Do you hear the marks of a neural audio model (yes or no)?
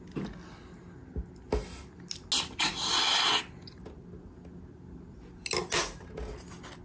no